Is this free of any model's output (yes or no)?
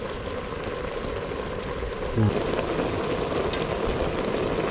yes